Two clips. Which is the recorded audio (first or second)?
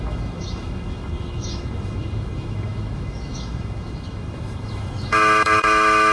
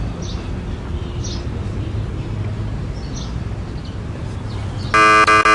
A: second